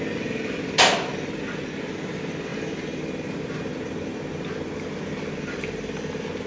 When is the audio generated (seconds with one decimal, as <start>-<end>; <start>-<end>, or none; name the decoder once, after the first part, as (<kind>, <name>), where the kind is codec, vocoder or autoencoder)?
none